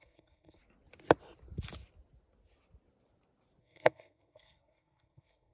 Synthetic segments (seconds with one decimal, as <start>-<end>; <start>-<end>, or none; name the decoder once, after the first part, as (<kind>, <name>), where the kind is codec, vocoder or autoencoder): 0.0-0.6 (codec, SNAC); 3.6-5.5